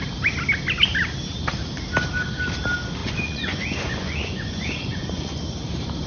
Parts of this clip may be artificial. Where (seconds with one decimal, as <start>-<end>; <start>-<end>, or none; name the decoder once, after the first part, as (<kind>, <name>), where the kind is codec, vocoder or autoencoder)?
3.0-5.4 (vocoder, Vocos)